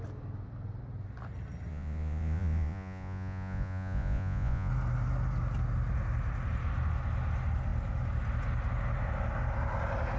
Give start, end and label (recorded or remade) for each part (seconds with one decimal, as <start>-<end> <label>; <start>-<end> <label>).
0.0-1.7 recorded; 1.7-4.7 remade; 4.7-10.2 recorded